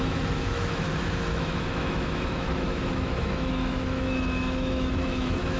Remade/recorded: remade